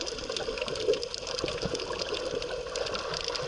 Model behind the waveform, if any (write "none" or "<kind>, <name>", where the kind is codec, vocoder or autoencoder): none